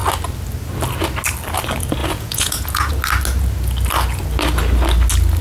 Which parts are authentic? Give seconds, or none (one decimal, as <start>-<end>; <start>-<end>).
0.0-2.0; 2.9-5.4